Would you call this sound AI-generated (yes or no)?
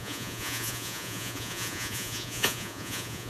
yes